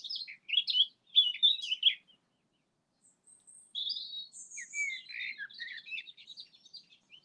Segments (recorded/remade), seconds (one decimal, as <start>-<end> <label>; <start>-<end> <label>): 0.0-7.2 recorded